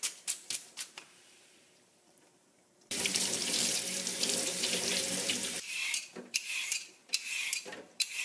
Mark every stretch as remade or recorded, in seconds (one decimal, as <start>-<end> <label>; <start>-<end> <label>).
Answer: 0.0-3.4 remade; 3.4-4.1 recorded; 4.1-8.2 remade